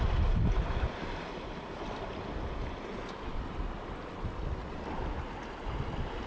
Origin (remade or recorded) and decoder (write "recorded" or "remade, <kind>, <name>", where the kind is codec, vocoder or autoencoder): recorded